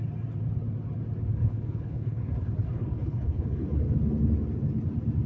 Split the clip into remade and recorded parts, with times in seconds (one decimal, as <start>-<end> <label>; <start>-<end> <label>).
0.0-1.4 recorded; 1.4-2.3 remade; 2.3-2.7 recorded; 2.7-3.8 remade; 3.8-5.3 recorded